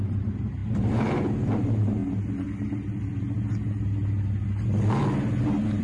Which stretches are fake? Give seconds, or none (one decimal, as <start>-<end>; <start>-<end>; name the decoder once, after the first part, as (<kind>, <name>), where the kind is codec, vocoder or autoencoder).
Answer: 0.0-2.0 (vocoder, BigVGAN v2)